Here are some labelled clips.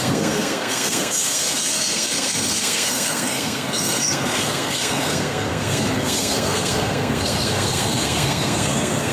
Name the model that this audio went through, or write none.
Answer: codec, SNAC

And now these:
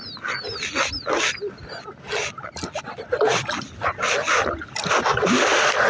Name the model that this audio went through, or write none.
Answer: none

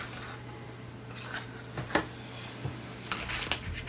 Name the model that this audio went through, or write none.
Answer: none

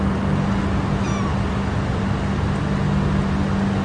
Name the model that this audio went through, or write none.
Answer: none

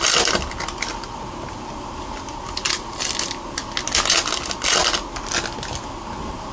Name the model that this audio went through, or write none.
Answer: none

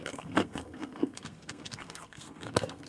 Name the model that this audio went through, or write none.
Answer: codec, SNAC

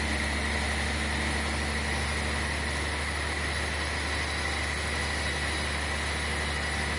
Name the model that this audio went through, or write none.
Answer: none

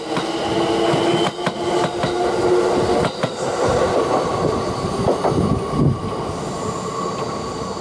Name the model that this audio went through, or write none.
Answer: none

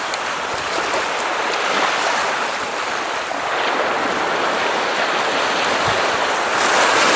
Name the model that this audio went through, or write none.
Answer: none